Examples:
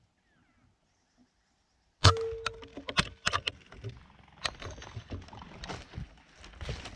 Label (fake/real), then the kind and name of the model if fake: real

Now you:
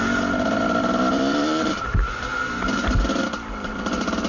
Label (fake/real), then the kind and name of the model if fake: real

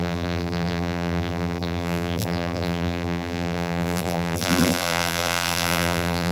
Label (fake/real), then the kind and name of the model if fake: fake, vocoder, BigVGAN v2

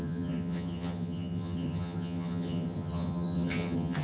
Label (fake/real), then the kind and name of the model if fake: fake, vocoder, HiFi-GAN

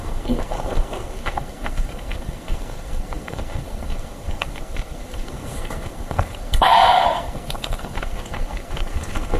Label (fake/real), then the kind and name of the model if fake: fake, codec, SNAC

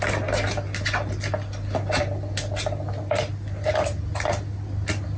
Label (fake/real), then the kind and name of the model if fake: real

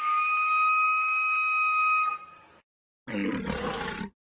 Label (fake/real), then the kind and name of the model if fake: real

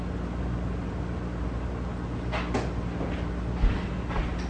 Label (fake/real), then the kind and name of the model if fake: real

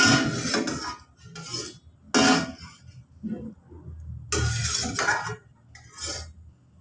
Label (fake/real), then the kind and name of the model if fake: real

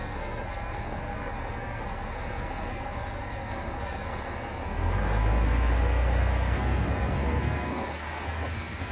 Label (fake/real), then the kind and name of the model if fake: fake, codec, SNAC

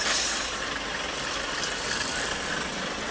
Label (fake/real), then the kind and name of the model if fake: fake, vocoder, BigVGAN v2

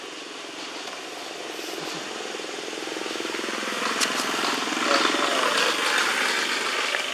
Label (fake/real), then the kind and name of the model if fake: real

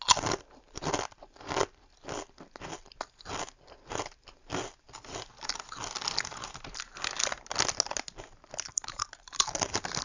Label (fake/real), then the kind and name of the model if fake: real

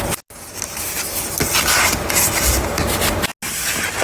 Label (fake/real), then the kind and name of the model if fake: real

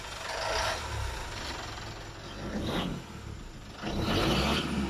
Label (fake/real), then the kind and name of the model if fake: real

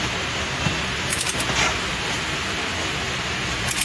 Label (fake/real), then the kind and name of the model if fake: real